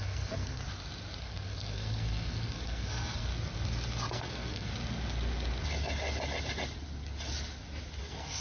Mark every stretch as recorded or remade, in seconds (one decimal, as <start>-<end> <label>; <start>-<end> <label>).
0.0-0.6 remade; 0.6-1.2 recorded; 1.2-3.3 remade; 3.3-4.1 recorded; 4.1-4.7 remade; 4.7-8.0 recorded; 8.0-8.4 remade